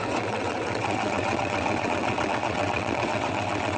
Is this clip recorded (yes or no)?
no